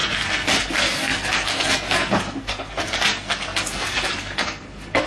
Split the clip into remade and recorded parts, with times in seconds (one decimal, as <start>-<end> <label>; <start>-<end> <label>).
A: 0.0-5.1 remade